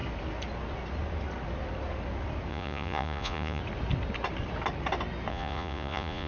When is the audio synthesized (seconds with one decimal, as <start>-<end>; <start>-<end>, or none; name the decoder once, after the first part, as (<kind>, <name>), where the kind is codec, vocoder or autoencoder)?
2.5-3.6 (vocoder, Vocos); 5.3-6.3